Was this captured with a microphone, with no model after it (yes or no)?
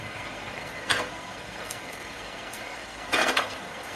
no